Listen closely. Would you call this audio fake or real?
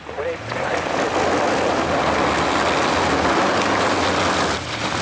real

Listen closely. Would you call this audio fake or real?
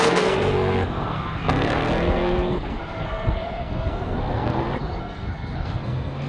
fake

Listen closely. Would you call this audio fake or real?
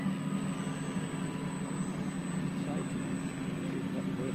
real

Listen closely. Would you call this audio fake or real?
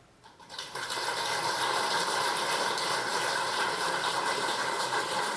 fake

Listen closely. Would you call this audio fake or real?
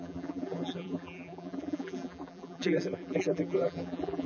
fake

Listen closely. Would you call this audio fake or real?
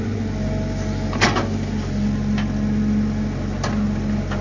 real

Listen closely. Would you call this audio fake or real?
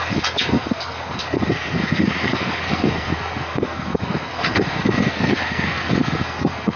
fake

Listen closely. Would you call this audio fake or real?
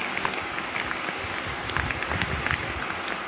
real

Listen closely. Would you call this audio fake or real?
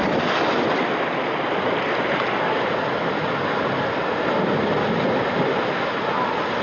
real